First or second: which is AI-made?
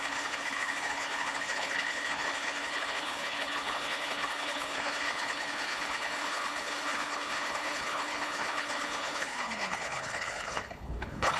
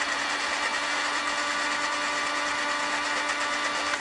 first